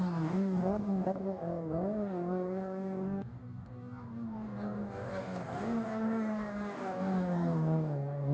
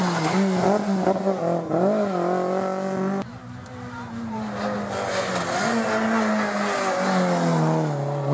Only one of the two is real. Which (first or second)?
second